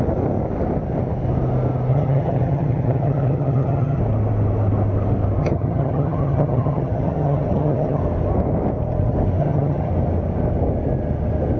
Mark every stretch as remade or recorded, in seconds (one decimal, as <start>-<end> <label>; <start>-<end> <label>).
0.0-1.9 recorded; 1.9-4.0 remade; 4.0-5.4 recorded; 5.4-8.0 remade; 8.0-9.4 recorded; 9.4-9.9 remade; 9.9-11.6 recorded